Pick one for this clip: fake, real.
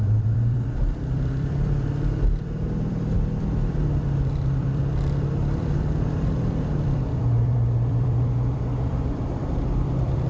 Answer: fake